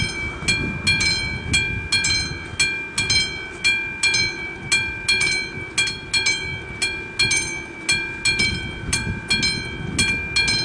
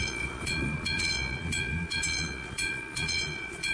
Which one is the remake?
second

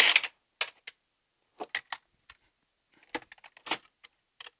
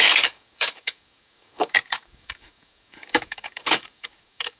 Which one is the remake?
second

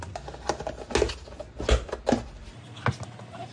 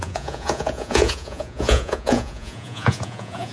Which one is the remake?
second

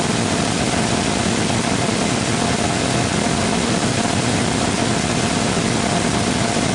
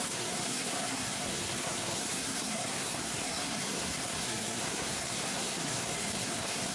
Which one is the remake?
second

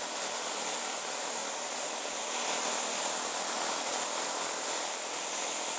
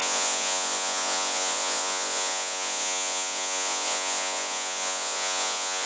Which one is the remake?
second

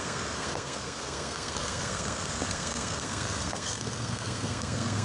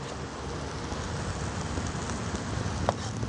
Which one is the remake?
first